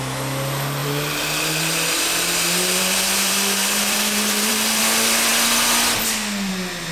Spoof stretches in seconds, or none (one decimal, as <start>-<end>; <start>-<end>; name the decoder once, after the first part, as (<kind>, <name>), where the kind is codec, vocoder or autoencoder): 0.8-4.8 (vocoder, BigVGAN v2)